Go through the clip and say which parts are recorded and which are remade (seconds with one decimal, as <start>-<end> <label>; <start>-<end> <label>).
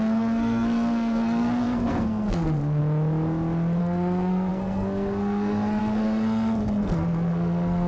0.0-2.8 remade; 2.8-3.8 recorded; 3.8-7.9 remade